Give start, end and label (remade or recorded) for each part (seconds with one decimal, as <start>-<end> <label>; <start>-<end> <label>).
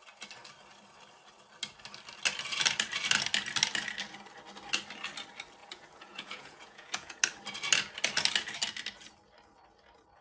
0.0-5.6 recorded; 5.6-7.2 remade; 7.2-10.2 recorded